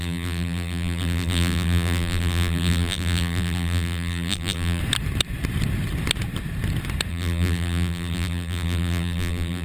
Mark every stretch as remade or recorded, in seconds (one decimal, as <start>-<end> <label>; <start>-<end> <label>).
0.0-4.8 remade; 4.8-7.1 recorded; 7.1-9.6 remade